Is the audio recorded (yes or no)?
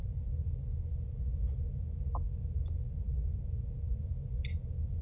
yes